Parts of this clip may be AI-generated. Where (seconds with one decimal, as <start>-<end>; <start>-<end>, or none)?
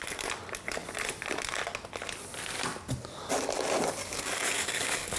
4.0-5.2